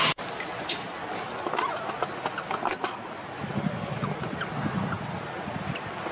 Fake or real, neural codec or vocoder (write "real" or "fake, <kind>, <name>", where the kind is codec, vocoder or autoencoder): real